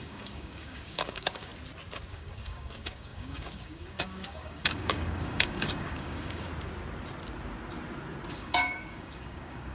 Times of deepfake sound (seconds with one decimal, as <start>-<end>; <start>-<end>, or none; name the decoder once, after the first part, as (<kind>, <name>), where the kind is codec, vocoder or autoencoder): 0.0-1.5 (codec, DAC); 2.1-6.5; 8.3-9.7